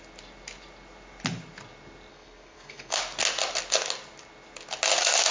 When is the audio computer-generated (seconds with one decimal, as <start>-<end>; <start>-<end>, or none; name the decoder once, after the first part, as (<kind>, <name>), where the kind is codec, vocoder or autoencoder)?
2.1-3.0 (codec, SNAC)